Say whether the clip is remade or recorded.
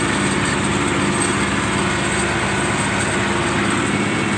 recorded